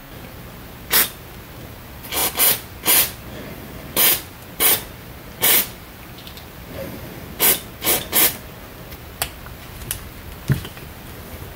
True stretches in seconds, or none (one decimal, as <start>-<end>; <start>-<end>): 0.0-11.6